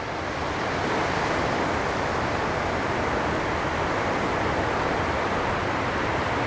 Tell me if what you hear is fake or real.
real